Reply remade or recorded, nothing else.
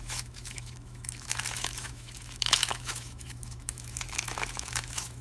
remade